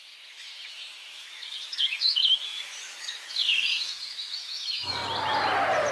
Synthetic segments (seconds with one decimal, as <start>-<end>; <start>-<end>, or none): 0.0-5.0